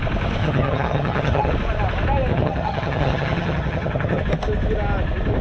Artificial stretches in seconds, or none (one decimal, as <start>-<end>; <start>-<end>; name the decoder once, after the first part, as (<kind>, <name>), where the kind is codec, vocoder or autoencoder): 0.4-1.5 (vocoder, HiFi-GAN); 2.3-4.2